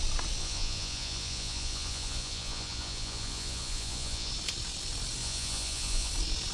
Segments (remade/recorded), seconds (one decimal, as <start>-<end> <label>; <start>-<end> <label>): 0.0-0.4 recorded; 0.4-4.3 remade; 4.3-5.2 recorded; 5.2-6.1 remade; 6.1-6.5 recorded